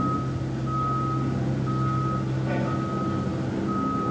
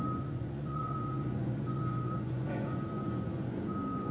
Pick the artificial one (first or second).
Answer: second